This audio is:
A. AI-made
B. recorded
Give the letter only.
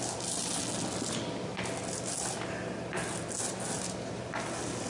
B